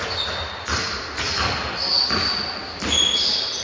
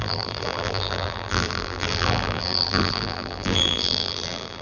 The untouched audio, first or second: first